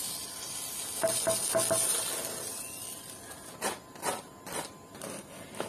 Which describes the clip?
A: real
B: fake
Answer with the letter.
A